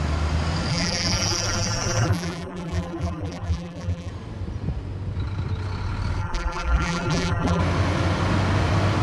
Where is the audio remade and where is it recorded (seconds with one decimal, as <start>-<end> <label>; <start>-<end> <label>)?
0.0-0.7 recorded; 0.7-4.1 remade; 4.1-6.2 recorded; 6.2-7.6 remade; 7.6-9.0 recorded